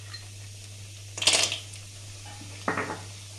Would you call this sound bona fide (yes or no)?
yes